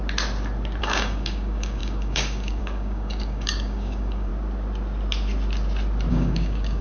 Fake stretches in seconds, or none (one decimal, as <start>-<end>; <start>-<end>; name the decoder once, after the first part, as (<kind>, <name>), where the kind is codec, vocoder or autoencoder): 0.8-4.3 (codec, DAC); 6.1-6.8